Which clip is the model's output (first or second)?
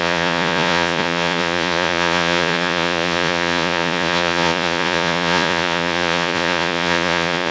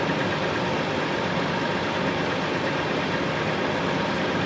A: first